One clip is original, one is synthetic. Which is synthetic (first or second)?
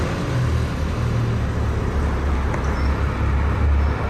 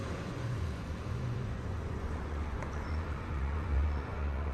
second